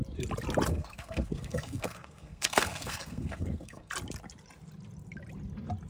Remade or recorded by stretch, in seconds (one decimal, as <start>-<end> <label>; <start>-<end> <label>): 0.0-0.7 recorded; 0.7-3.9 remade; 3.9-5.9 recorded